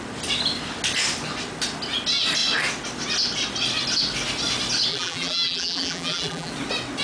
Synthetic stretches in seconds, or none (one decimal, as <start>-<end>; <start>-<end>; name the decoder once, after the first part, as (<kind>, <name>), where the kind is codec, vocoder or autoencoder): 4.9-6.5 (vocoder, BigVGAN v2)